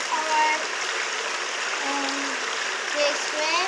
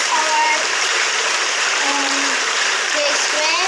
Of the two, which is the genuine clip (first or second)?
first